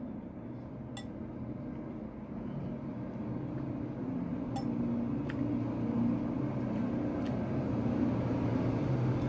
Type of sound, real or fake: real